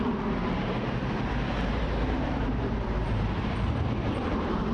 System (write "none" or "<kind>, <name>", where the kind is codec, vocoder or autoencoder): vocoder, BigVGAN v2